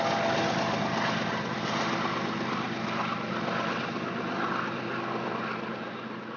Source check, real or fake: real